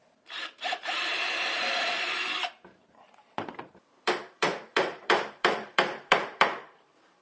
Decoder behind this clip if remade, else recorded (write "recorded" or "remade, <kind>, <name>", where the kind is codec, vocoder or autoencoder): remade, vocoder, BigVGAN v2